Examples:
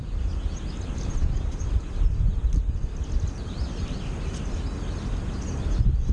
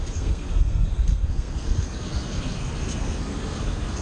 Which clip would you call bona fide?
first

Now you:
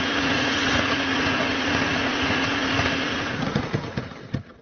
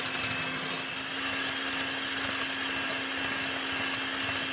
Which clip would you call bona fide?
second